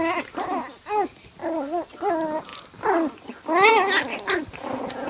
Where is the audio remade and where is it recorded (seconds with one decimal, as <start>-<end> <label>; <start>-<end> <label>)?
0.0-1.4 recorded; 1.4-2.1 remade; 2.1-5.1 recorded